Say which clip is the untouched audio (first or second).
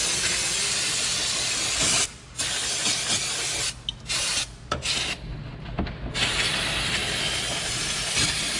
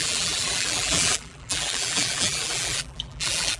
first